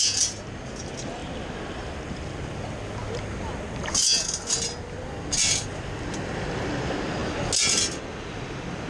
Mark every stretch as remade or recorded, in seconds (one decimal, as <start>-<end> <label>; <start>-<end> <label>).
0.0-8.9 recorded